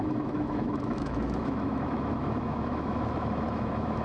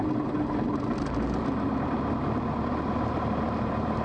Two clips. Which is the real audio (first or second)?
second